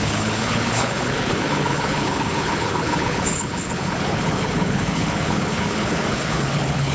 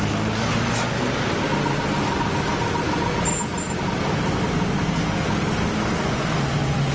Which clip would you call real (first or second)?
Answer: second